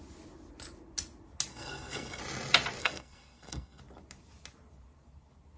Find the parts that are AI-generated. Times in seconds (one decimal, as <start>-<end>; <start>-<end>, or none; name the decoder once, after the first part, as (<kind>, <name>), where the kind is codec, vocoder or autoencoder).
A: 1.5-2.2 (codec, SNAC); 2.8-3.8